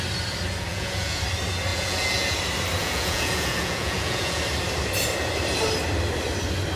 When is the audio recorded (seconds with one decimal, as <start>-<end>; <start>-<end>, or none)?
0.0-0.7; 1.2-1.7; 2.4-2.8; 4.4-6.8